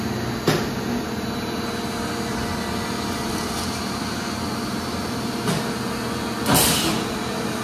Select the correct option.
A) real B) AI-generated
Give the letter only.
A